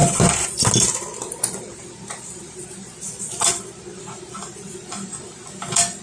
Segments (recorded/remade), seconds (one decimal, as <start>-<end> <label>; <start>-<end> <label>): 0.0-3.6 remade; 3.6-6.0 recorded